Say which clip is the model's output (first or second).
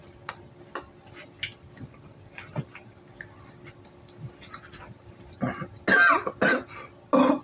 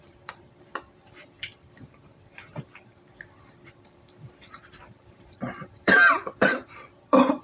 second